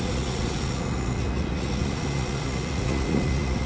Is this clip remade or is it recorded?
remade